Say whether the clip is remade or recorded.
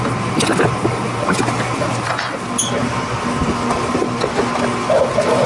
recorded